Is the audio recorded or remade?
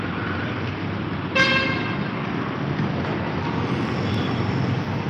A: recorded